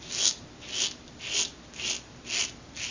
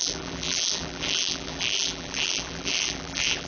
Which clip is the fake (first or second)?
second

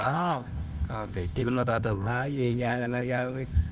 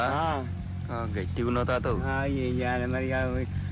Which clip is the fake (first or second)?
first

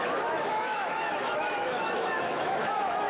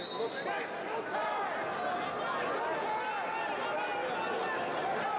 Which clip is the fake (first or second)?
first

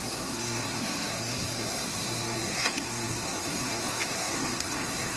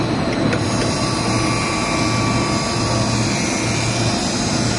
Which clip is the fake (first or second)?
first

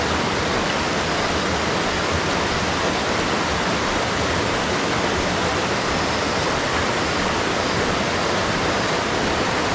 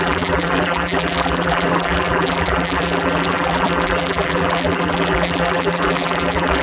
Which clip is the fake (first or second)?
second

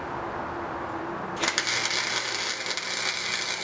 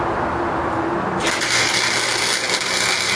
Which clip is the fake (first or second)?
second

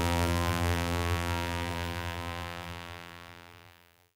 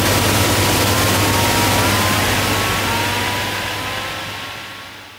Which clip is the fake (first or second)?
first